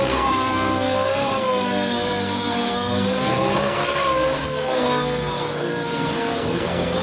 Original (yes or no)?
no